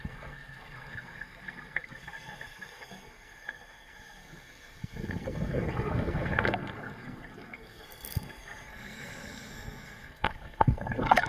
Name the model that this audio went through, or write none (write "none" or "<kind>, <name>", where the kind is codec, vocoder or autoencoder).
codec, SNAC